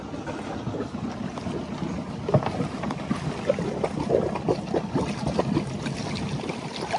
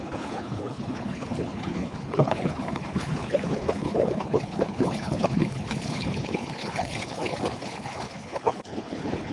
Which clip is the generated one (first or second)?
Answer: second